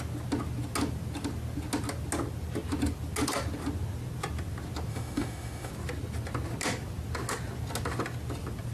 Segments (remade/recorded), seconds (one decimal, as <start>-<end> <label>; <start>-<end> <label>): 0.0-4.9 recorded; 4.9-5.7 remade; 5.7-8.7 recorded